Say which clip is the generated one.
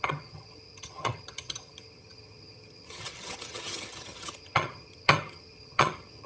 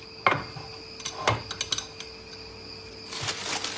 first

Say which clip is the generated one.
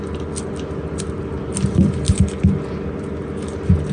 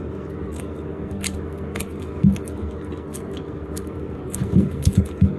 second